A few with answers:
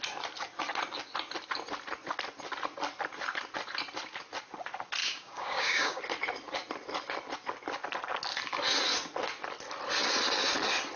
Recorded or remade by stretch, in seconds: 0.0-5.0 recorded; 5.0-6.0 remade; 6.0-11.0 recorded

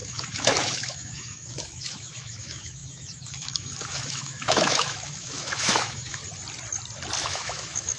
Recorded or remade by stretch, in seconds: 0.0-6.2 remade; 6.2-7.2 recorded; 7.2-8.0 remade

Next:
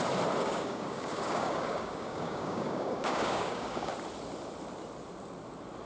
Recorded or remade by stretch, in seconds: 0.0-0.4 recorded; 0.4-3.9 remade; 3.9-5.9 recorded

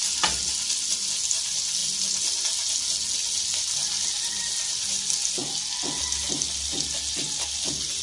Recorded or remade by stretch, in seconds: 0.0-8.0 recorded